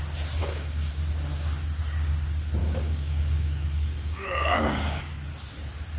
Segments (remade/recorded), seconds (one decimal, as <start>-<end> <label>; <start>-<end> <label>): 0.0-0.4 recorded; 0.4-0.9 remade; 0.9-2.6 recorded; 2.6-5.0 remade; 5.0-6.0 recorded

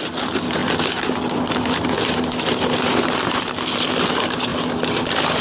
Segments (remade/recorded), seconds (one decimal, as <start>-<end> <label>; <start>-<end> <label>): 0.0-5.4 recorded

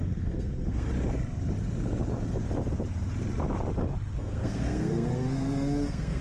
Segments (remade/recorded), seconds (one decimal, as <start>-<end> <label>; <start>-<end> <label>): 0.0-0.9 remade; 0.9-4.2 recorded; 4.2-6.2 remade

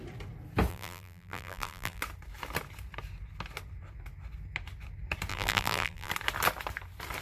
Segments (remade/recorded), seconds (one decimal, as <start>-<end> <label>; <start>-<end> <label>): 0.0-0.7 recorded; 0.7-2.0 remade; 2.0-5.3 recorded; 5.3-6.1 remade; 6.1-7.2 recorded

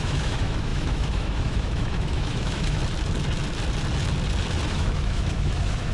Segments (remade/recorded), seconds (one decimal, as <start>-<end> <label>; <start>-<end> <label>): 0.0-2.8 remade; 2.8-4.7 recorded; 4.7-5.9 remade